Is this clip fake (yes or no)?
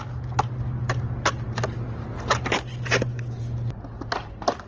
no